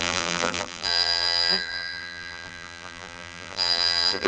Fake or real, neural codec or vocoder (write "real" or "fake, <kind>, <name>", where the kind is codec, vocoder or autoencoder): fake, vocoder, BigVGAN v2